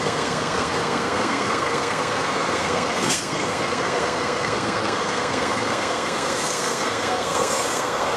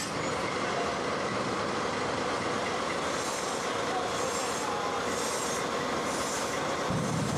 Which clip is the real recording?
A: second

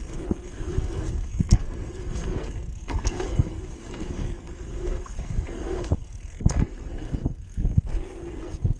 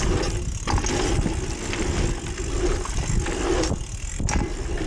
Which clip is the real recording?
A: second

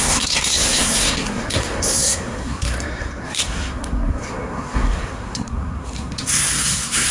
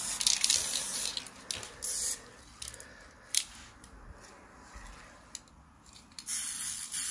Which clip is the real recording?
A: second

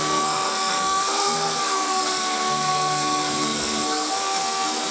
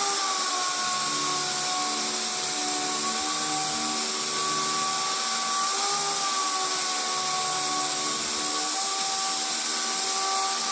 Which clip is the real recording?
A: second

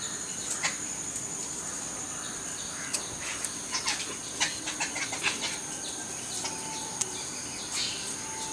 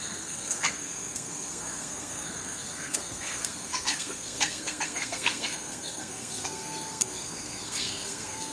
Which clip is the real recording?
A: first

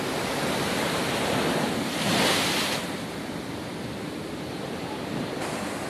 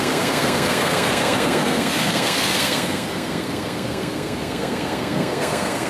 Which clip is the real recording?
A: first